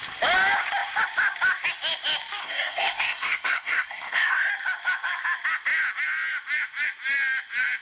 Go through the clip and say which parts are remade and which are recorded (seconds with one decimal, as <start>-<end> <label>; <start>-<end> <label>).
0.0-2.4 recorded; 2.4-4.5 remade; 4.5-7.8 recorded